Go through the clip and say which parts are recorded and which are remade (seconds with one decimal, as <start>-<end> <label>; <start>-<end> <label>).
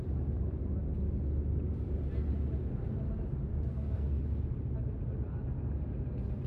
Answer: 0.0-3.5 recorded; 3.5-4.2 remade; 4.2-6.5 recorded